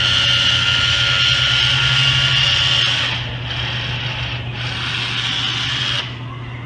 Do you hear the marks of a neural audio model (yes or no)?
no